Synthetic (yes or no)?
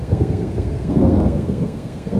yes